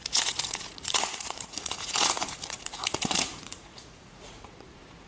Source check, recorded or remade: remade